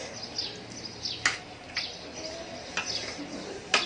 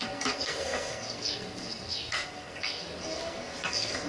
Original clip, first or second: first